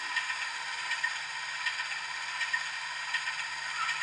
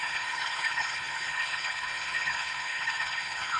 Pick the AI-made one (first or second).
second